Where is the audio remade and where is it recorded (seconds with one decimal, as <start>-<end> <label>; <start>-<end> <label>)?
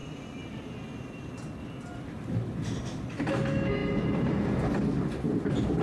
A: 0.0-3.2 remade; 3.2-3.8 recorded; 3.8-4.4 remade; 4.4-5.8 recorded